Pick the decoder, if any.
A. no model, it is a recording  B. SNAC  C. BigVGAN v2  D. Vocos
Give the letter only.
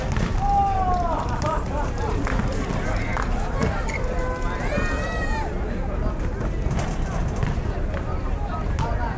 A